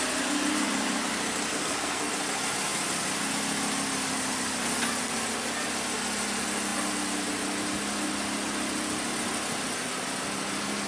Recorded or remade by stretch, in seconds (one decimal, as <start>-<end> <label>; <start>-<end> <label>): 0.0-1.5 recorded; 1.5-2.1 remade; 2.1-10.9 recorded